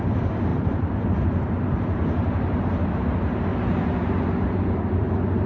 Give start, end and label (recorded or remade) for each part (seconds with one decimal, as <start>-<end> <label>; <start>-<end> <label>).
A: 0.0-0.5 recorded; 0.5-2.9 remade; 2.9-3.5 recorded; 3.5-4.8 remade; 4.8-5.5 recorded